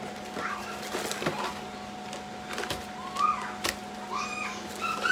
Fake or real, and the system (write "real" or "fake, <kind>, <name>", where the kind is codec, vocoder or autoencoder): real